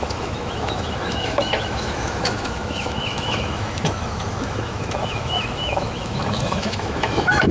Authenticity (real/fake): fake